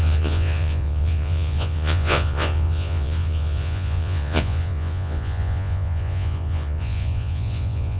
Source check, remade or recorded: remade